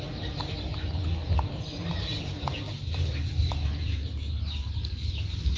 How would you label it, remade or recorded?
remade